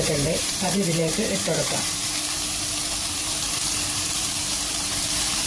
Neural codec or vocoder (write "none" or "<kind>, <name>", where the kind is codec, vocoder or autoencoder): vocoder, BigVGAN v2